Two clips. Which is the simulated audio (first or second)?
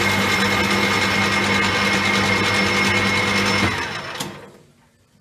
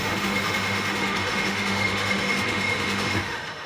second